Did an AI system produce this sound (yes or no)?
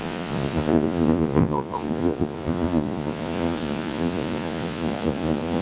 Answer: yes